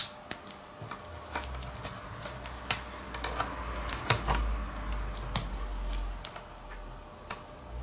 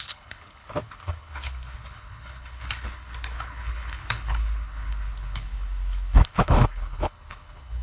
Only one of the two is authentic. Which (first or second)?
first